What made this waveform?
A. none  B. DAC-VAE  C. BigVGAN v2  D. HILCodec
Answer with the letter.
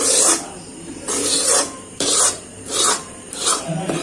C